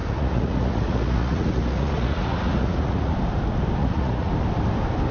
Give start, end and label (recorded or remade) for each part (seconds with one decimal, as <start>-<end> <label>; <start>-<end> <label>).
0.0-3.1 remade; 3.1-3.8 recorded; 3.8-4.3 remade; 4.3-5.1 recorded